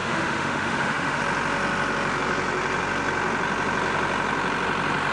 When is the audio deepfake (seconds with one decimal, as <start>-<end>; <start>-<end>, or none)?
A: 0.0-1.2